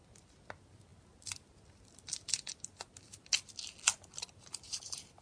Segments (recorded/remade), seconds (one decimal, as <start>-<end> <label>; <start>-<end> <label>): 0.0-5.2 recorded

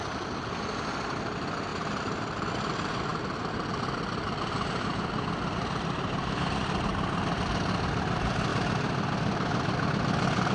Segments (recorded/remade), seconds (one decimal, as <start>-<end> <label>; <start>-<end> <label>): 0.0-6.9 remade; 6.9-7.9 recorded; 7.9-10.5 remade